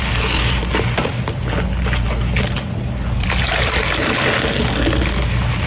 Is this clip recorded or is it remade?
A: recorded